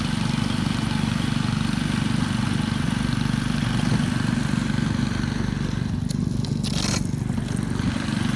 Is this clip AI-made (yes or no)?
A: no